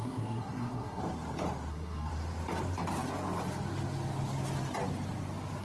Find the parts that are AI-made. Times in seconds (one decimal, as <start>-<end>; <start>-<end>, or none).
0.0-1.0; 1.7-2.1